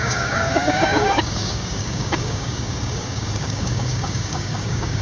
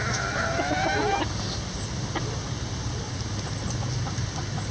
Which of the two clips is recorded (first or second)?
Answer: second